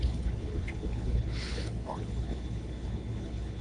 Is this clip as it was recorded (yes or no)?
no